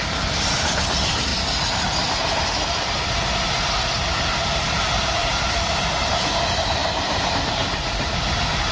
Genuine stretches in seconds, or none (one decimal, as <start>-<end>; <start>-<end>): 1.3-4.5